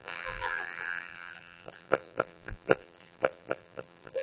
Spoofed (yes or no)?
yes